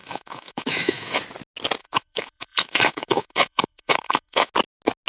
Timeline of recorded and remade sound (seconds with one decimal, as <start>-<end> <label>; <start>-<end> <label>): 0.0-1.2 remade; 1.2-1.8 recorded; 1.8-4.5 remade; 4.5-5.1 recorded